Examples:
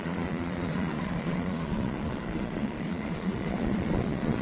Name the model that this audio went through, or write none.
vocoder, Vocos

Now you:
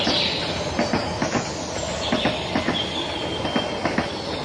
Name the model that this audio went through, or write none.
none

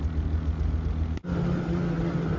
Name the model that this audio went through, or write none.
none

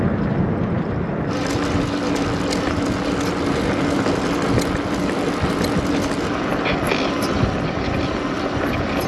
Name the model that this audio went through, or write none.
none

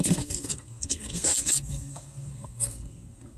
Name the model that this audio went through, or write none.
codec, SNAC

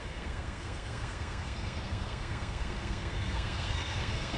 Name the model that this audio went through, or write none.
codec, SNAC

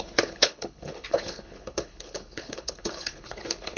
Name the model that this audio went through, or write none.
codec, HILCodec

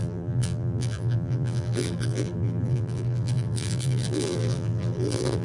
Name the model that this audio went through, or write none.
vocoder, BigVGAN v2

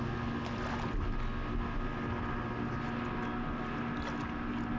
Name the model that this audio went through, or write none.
none